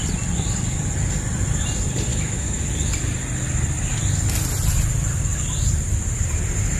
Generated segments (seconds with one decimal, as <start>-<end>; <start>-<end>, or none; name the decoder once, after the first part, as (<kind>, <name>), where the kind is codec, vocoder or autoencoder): 2.1-2.6 (autoencoder, DAC-VAE)

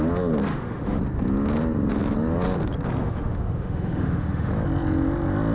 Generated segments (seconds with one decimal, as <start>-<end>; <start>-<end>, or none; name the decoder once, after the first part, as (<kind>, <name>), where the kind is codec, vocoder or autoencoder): 0.5-1.0 (autoencoder, DAC-VAE); 3.0-4.5

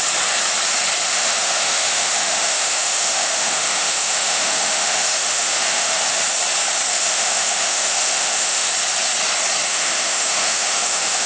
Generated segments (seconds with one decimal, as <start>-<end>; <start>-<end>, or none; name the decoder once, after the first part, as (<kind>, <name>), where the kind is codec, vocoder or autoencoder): 1.1-6.0 (autoencoder, DAC-VAE); 6.9-8.7; 9.7-11.3

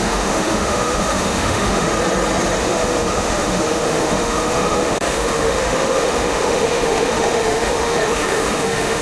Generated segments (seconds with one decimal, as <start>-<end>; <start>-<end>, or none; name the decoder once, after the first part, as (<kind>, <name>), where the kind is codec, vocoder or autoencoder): 0.0-1.9 (autoencoder, DAC-VAE); 2.6-9.0

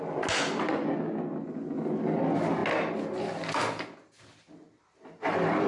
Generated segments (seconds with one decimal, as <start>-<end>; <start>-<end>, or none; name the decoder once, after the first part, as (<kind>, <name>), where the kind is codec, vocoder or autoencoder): none